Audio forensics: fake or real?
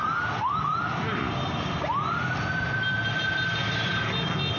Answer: real